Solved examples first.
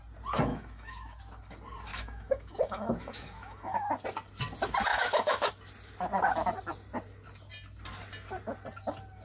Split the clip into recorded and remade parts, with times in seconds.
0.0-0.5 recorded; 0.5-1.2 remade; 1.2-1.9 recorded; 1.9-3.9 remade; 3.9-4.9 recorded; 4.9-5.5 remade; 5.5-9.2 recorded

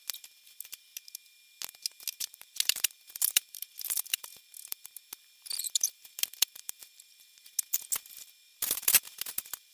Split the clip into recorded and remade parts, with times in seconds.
0.0-9.7 recorded